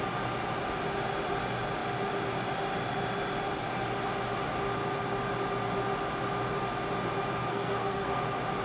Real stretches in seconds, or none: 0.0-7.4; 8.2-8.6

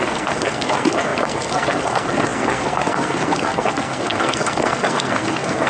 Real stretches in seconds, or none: none

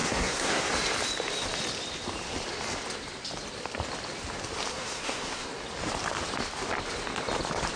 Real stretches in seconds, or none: 0.7-4.7; 5.5-7.8

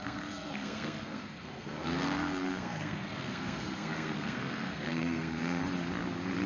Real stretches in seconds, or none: 5.6-6.5

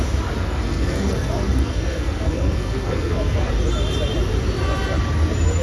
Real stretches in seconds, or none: 0.0-0.4; 3.5-5.6